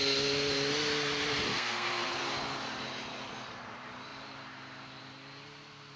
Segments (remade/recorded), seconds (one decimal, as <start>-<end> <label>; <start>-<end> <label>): 0.0-1.5 recorded; 1.5-2.2 remade; 2.2-6.0 recorded